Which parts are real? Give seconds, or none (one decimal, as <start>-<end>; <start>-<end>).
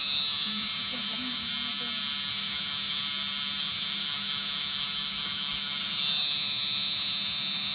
1.5-2.3; 3.0-3.6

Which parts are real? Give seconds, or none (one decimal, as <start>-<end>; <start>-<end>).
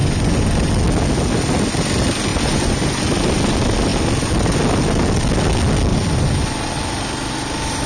0.7-2.3; 3.0-5.9; 6.9-7.9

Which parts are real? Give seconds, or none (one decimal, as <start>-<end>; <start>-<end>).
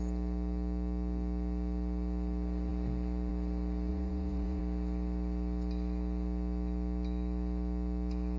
0.0-3.9; 4.6-8.4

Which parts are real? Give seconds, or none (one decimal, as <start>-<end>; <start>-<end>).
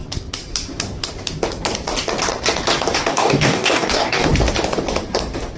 0.0-3.1; 4.3-5.6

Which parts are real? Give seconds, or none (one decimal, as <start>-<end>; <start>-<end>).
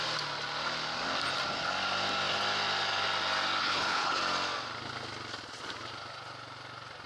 0.0-3.6; 4.2-7.1